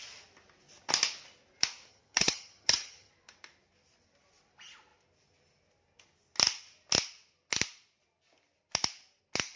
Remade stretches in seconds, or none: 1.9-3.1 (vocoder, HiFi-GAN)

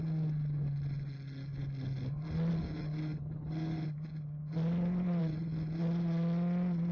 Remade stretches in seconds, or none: none